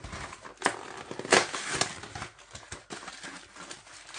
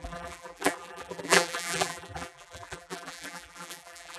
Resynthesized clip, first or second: second